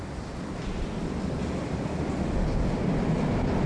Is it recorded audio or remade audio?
remade